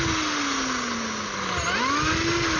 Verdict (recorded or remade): recorded